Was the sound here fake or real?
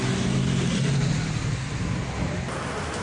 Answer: real